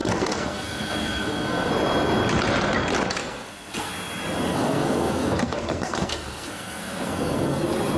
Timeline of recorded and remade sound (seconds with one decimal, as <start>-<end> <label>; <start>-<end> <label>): 0.0-1.7 remade; 1.7-3.2 recorded; 3.2-3.9 remade; 3.9-4.5 recorded; 4.5-7.6 remade; 7.6-8.0 recorded